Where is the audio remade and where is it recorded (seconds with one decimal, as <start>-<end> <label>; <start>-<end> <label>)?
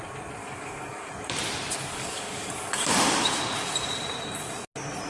0.0-0.4 recorded; 0.4-1.1 remade; 1.1-1.9 recorded; 1.9-2.9 remade; 2.9-5.1 recorded